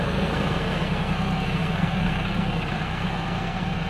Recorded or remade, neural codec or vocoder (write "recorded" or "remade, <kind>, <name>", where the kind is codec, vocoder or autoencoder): remade, codec, SNAC